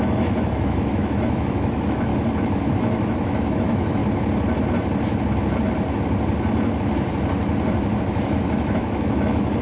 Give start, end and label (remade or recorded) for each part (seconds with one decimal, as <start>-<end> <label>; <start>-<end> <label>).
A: 0.0-2.1 remade; 2.1-2.7 recorded; 2.7-4.0 remade; 4.0-8.0 recorded; 8.0-9.6 remade